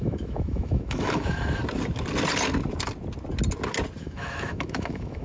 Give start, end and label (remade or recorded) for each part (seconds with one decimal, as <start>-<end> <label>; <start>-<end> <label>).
0.0-1.6 remade; 1.6-4.0 recorded; 4.0-5.2 remade